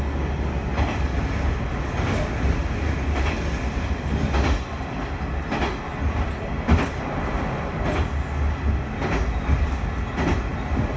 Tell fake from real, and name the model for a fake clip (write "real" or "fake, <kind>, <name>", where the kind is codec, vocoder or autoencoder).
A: real